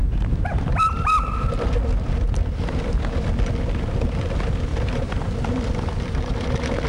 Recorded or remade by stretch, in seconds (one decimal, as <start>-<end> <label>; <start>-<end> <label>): 0.0-0.7 remade; 0.7-4.7 recorded; 4.7-5.3 remade; 5.3-6.9 recorded